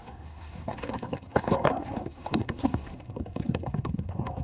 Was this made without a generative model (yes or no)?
no